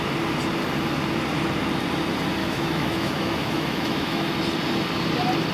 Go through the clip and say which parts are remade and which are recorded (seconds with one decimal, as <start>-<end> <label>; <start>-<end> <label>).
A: 0.0-2.4 recorded; 2.4-4.3 remade; 4.3-5.5 recorded